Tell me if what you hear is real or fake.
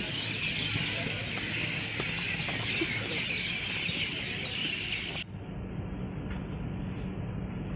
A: real